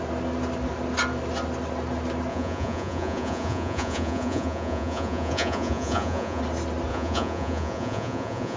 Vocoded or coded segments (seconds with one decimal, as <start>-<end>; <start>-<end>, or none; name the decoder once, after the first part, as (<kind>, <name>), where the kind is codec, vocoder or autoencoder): 2.3-6.4 (vocoder, Vocos); 6.9-8.6